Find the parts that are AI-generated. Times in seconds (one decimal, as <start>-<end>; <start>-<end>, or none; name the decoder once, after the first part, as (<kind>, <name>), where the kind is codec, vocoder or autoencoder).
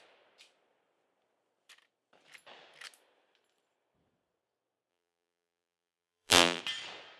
4.9-6.6 (vocoder, BigVGAN v2)